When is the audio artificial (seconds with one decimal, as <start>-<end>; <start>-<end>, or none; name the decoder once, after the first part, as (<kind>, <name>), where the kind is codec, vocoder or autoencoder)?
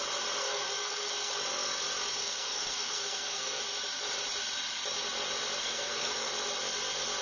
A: 0.4-1.3 (codec, SNAC); 2.2-3.6; 5.6-6.3